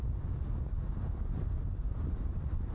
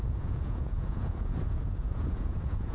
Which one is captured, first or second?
first